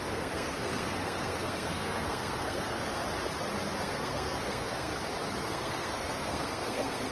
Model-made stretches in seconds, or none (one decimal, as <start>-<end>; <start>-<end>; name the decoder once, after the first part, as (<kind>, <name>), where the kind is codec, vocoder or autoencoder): 0.0-3.0 (codec, SNAC); 3.8-4.9; 5.4-7.1